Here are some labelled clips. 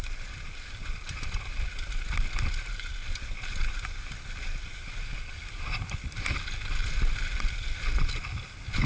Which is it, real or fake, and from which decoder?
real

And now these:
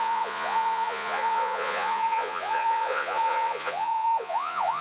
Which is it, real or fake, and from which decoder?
fake, vocoder, Vocos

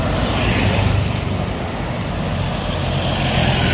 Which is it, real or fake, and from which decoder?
real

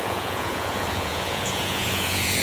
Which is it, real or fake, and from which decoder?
fake, vocoder, Vocos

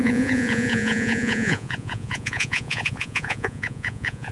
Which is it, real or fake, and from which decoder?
fake, vocoder, Vocos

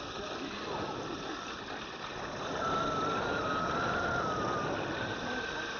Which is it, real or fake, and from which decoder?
real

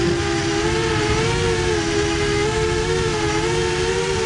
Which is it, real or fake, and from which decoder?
real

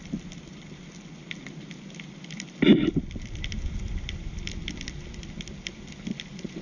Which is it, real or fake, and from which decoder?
real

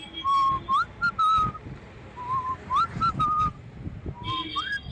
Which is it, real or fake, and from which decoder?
real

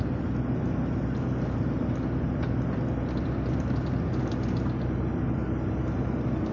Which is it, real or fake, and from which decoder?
real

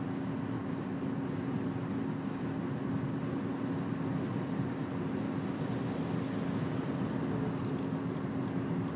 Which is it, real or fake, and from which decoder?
real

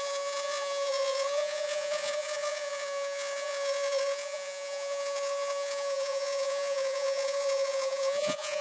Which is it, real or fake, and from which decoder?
fake, vocoder, Vocos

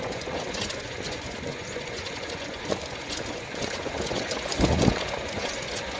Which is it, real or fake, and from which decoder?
fake, vocoder, Vocos